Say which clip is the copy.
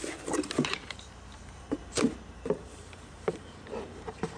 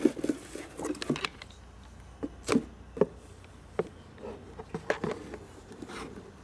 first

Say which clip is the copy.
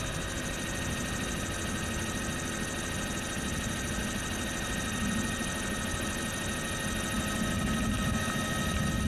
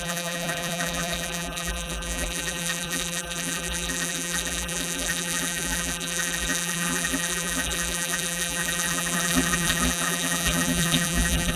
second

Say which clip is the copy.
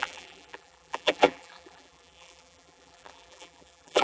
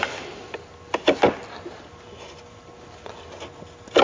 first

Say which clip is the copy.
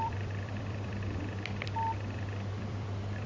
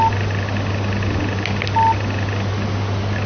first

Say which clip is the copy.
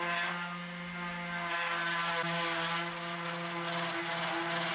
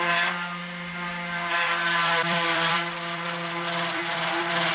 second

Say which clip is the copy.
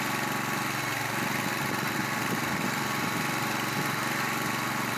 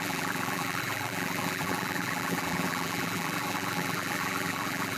second